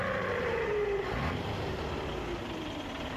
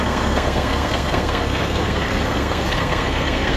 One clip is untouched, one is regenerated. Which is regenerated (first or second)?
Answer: second